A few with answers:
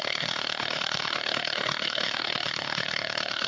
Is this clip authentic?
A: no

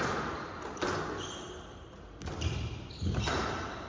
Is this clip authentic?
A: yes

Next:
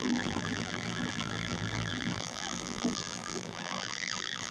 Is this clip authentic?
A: no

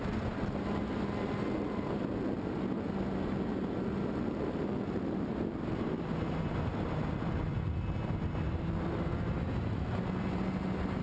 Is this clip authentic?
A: yes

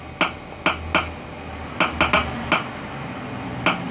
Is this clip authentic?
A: yes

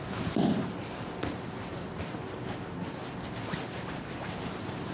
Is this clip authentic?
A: yes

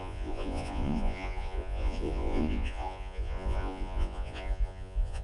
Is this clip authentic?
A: no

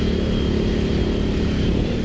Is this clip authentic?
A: yes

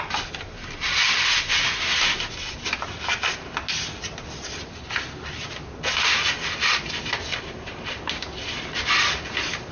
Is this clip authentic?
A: yes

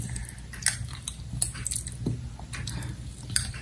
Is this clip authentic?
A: yes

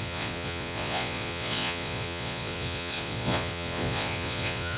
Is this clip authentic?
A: no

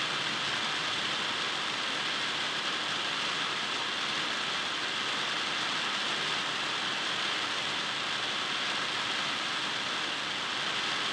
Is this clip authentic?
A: yes